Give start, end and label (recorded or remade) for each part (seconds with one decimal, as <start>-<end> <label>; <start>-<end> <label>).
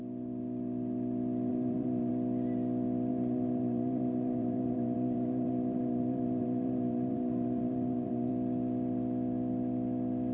0.0-1.5 recorded; 1.5-2.1 remade; 2.1-3.1 recorded; 3.1-8.3 remade; 8.3-10.3 recorded